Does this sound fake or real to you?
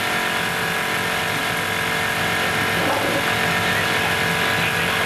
real